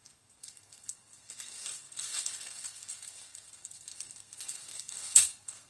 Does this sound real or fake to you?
fake